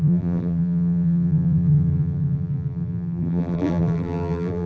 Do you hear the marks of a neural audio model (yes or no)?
yes